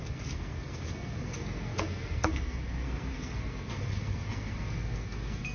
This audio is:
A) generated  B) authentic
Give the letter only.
A